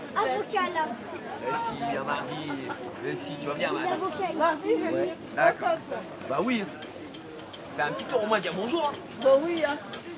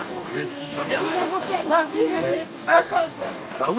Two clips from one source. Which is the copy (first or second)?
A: second